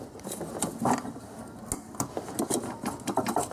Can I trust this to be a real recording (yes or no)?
yes